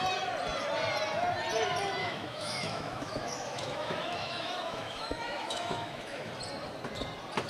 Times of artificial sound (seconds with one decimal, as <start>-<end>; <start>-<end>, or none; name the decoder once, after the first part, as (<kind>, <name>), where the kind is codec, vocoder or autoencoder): 2.0-6.3 (autoencoder, DAC-VAE)